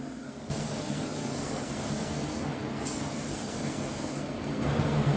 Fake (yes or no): yes